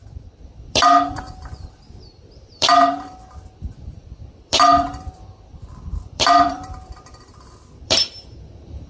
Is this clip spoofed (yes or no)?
yes